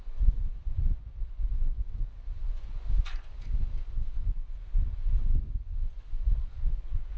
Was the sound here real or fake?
fake